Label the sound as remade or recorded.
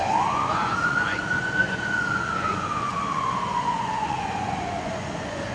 remade